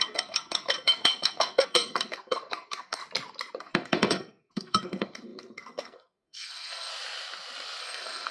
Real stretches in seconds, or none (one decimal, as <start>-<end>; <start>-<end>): 3.0-3.6; 6.9-7.8